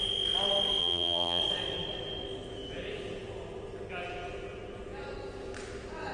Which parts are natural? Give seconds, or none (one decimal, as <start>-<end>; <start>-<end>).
0.0-0.8; 1.4-6.1